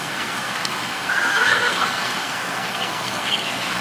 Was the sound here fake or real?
fake